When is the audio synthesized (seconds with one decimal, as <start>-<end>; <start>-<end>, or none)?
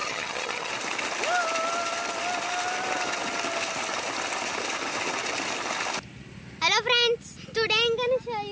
0.0-0.7